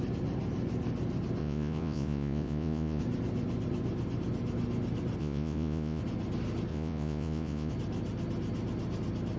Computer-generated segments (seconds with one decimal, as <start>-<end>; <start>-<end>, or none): 1.4-3.0; 5.2-6.0; 6.7-7.7